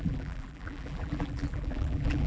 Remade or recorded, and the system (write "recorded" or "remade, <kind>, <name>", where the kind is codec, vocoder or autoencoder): remade, vocoder, BigVGAN v2